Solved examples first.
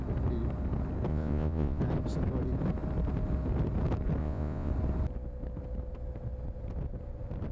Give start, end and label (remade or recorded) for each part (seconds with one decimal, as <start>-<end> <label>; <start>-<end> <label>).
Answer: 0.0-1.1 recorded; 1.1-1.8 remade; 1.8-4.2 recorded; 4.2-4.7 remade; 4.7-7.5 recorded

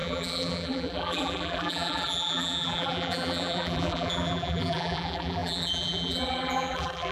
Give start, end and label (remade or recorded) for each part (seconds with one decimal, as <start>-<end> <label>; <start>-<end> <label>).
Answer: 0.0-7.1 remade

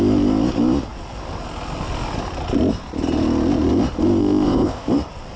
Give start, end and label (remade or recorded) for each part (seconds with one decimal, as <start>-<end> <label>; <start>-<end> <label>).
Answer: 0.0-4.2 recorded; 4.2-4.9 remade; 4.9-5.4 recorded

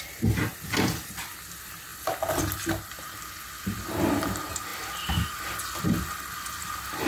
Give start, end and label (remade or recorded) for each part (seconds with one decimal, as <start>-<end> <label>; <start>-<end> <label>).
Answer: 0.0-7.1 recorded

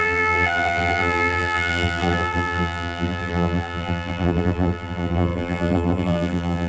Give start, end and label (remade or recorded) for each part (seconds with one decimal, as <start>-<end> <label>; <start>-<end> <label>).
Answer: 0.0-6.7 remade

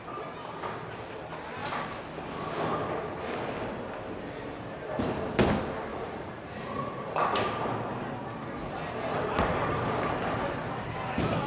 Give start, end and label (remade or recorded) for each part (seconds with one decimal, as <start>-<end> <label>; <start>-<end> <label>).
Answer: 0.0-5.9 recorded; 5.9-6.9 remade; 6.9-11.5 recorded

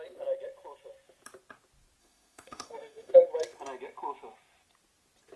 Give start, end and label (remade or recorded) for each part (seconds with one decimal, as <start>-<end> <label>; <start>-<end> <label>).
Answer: 0.0-2.0 recorded; 2.0-3.1 remade; 3.1-5.4 recorded

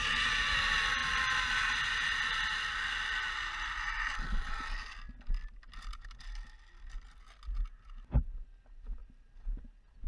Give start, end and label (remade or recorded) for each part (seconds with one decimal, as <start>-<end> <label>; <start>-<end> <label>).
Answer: 0.0-10.1 recorded